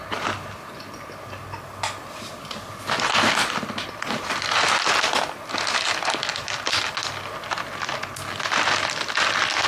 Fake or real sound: real